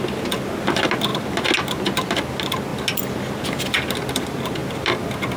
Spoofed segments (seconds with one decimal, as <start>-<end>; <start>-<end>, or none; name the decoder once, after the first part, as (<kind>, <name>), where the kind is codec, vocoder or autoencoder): none